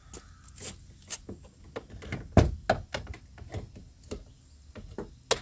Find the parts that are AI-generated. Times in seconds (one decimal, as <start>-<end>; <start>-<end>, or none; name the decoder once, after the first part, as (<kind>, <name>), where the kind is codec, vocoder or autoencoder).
none